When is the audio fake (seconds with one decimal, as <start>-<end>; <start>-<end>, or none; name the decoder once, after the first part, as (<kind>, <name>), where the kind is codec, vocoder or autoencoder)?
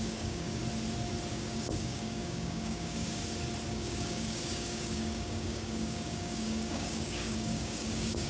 0.0-0.6 (codec, DAC); 1.3-3.2; 3.7-8.3